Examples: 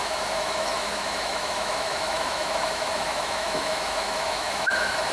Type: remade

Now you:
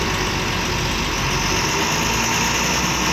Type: recorded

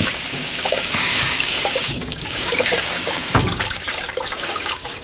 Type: remade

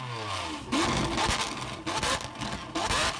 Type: recorded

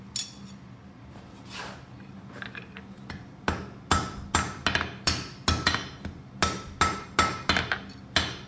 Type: recorded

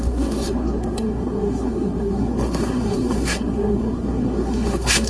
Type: remade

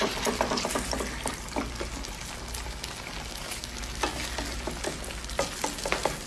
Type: recorded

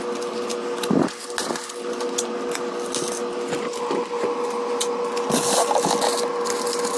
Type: recorded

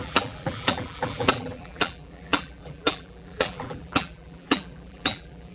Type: remade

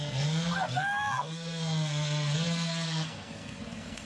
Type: remade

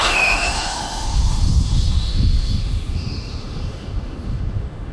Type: remade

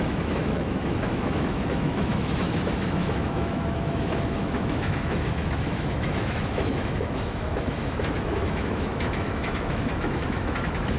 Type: remade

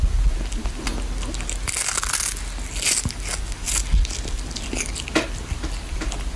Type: recorded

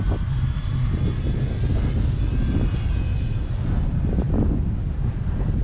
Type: recorded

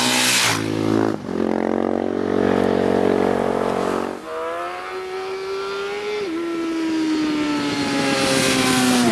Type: recorded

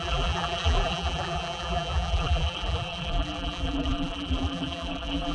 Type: remade